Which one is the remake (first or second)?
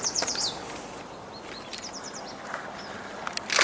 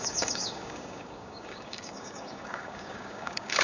second